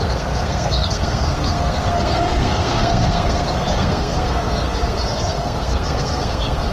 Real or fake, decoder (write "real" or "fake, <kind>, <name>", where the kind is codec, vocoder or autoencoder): fake, codec, SNAC